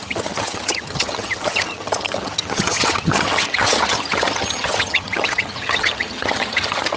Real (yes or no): no